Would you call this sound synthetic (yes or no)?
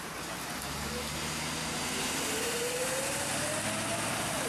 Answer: no